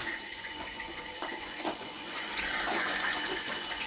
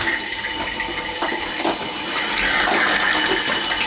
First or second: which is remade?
first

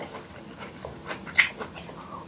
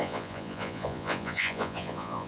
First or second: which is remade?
second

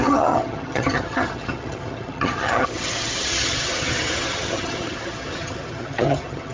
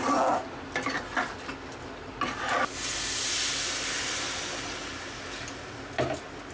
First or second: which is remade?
first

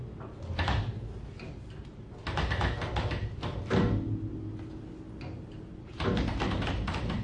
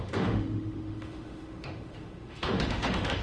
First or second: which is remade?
second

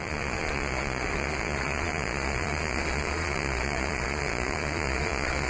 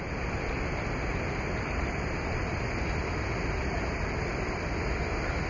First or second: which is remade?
first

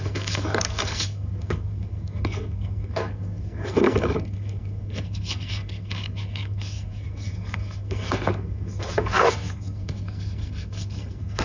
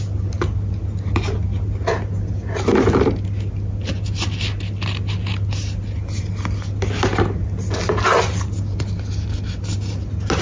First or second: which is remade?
first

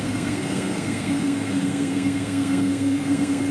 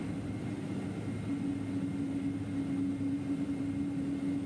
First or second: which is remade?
first